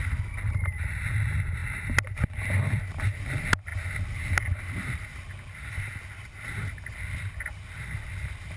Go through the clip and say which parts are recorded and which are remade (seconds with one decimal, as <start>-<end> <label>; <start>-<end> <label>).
0.0-8.6 recorded